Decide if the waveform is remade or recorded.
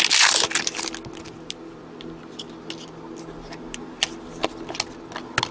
recorded